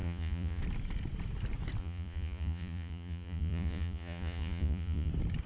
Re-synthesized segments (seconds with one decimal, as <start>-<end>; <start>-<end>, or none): 0.0-0.6; 1.8-5.1